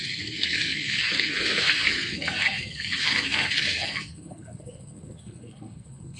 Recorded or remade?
remade